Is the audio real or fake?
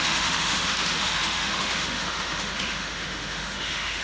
fake